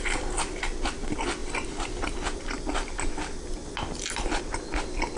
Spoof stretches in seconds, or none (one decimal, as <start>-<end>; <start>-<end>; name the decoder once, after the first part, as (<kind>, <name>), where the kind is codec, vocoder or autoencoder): none